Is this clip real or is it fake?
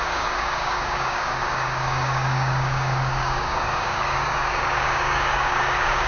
fake